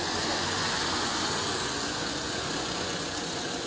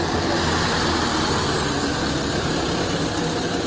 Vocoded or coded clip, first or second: first